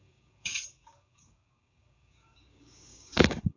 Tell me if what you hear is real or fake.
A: fake